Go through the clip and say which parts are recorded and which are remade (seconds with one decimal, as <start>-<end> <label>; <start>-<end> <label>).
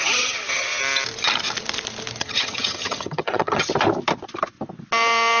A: 0.0-0.8 remade; 0.8-2.2 recorded; 2.2-3.7 remade; 3.7-5.4 recorded